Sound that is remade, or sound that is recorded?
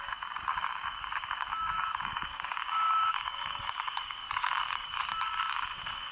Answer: remade